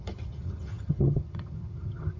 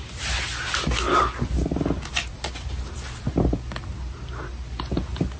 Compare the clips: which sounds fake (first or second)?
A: first